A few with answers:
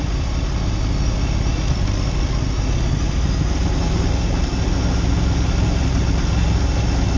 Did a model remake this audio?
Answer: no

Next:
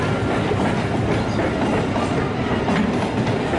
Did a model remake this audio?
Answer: no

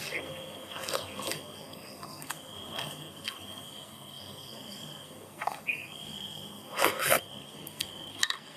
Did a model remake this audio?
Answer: yes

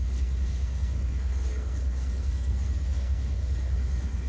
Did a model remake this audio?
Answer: yes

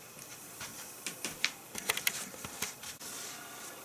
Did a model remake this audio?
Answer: no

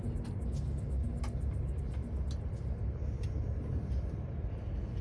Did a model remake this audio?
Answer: no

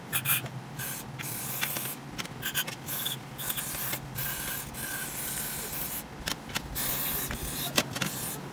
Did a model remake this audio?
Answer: no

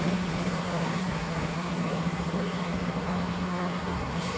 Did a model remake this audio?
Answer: yes